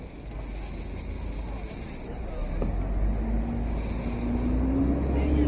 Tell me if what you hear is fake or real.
real